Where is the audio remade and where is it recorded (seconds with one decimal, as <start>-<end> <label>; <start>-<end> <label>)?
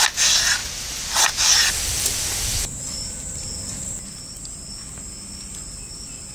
0.0-6.3 recorded